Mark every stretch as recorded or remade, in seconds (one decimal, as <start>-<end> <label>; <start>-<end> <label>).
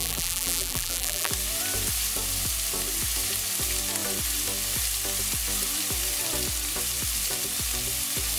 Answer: 0.0-1.3 remade; 1.3-8.4 recorded